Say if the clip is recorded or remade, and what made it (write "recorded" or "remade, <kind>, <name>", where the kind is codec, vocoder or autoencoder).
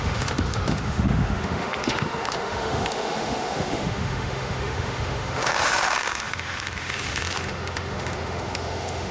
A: remade, autoencoder, DAC-VAE